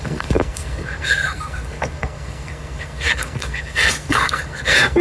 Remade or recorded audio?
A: remade